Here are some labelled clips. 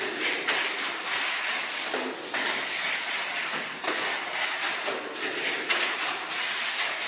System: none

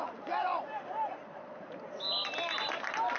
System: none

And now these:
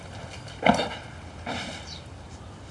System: none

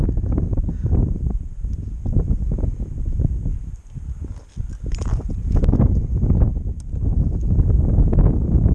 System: none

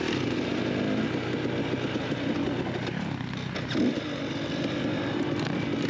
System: none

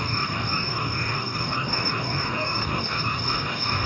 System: codec, DAC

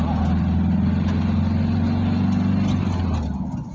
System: none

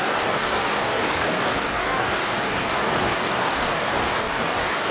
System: codec, DAC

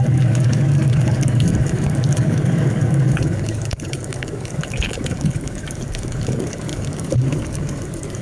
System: codec, DAC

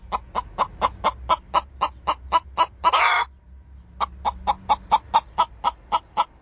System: none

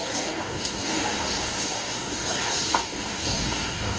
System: codec, DAC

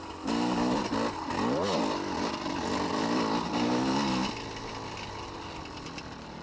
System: none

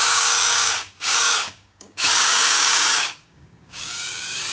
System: codec, DAC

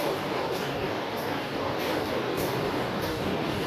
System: codec, DAC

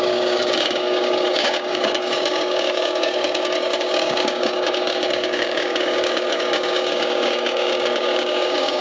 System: codec, DAC